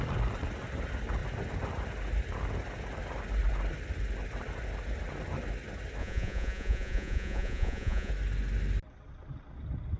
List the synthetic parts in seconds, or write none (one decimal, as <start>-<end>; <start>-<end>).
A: 6.0-8.1